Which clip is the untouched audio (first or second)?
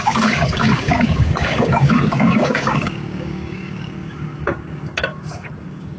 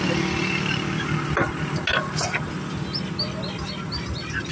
second